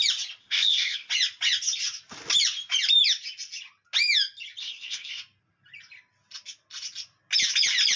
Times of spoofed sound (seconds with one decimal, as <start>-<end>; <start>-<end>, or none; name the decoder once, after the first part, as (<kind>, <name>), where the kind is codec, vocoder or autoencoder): 0.4-1.1 (codec, ZipCodec); 4.6-5.2